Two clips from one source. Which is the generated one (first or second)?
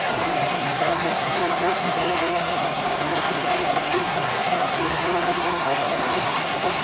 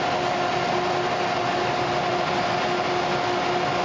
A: first